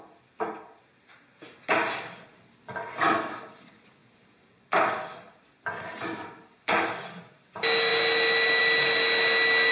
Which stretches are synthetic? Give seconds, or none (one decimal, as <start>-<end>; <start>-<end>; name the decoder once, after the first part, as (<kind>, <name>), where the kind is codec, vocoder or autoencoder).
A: none